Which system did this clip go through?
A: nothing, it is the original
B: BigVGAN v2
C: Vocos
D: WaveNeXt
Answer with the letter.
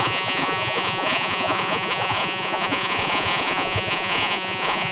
C